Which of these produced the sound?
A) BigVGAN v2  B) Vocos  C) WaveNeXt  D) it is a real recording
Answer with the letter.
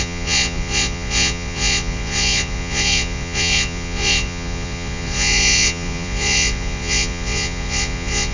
B